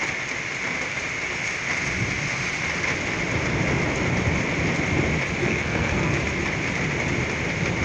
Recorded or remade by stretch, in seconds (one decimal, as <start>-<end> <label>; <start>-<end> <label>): 0.0-5.4 recorded; 5.4-6.2 remade; 6.2-7.8 recorded